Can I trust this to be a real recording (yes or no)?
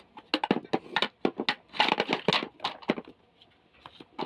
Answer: yes